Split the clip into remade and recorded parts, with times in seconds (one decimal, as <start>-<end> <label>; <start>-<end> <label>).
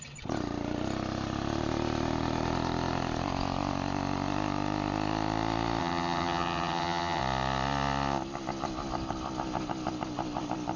0.0-5.8 recorded; 5.8-7.2 remade; 7.2-10.8 recorded